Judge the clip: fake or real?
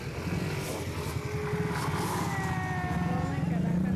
real